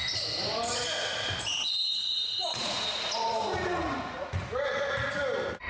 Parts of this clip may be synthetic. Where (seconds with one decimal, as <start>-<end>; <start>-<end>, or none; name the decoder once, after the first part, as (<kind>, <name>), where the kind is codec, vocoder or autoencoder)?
1.9-5.1 (vocoder, Vocos)